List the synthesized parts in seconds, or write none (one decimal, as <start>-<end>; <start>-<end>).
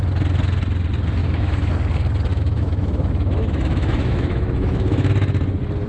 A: 1.2-1.7; 2.3-5.1